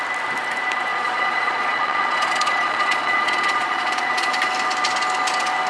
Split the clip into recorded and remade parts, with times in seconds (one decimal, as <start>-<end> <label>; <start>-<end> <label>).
0.0-0.9 recorded; 0.9-4.3 remade; 4.3-5.7 recorded